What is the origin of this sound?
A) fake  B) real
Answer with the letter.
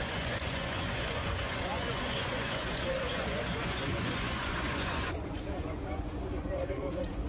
A